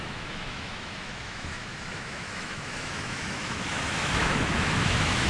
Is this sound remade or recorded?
remade